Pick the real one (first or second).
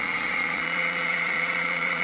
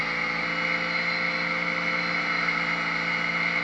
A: second